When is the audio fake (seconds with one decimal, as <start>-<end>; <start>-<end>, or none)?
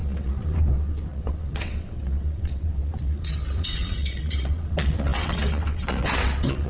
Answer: 0.0-6.7